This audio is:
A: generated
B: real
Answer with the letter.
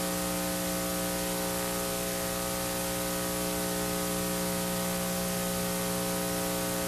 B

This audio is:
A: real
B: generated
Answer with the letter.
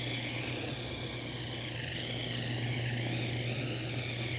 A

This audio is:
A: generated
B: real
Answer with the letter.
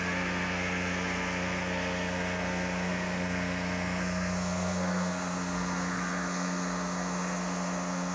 A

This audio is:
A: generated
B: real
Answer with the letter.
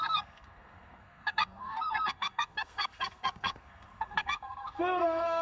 A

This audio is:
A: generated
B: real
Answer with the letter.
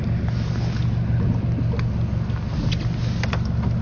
B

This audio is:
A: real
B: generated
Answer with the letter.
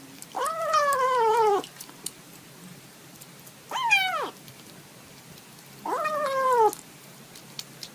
A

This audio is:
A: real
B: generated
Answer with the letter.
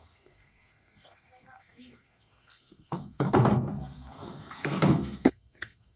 B